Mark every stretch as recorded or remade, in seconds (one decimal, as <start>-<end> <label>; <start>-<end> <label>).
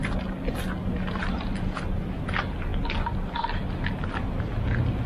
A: 0.0-5.1 recorded